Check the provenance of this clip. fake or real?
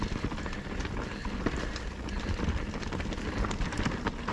real